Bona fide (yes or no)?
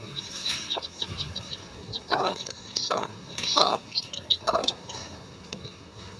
no